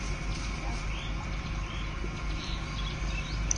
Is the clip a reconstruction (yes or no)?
no